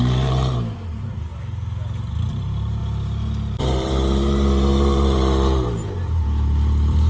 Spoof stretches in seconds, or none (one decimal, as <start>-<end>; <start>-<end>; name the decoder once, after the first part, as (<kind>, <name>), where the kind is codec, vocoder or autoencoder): 0.0-1.3 (vocoder, BigVGAN v2); 2.3-2.8; 3.6-7.1